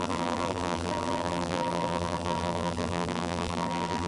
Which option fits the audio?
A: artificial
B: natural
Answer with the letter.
A